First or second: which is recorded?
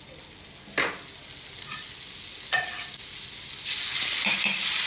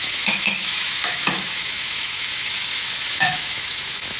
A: first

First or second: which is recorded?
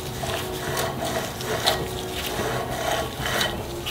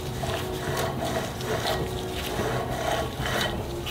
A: first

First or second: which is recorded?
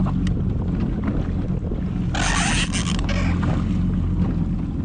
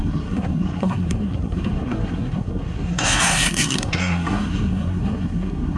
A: first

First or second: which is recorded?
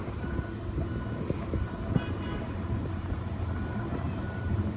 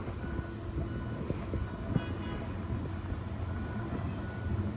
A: second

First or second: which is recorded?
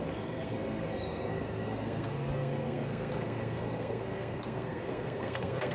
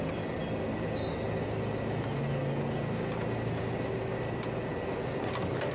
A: second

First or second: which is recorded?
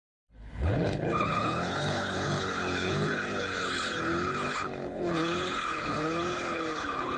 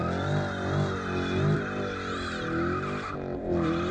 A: second